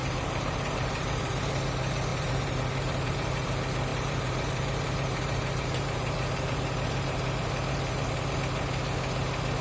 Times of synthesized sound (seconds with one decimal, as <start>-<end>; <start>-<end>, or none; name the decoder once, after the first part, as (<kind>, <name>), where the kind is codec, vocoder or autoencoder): 0.0-1.7 (vocoder, BigVGAN v2); 2.1-3.5; 3.9-8.4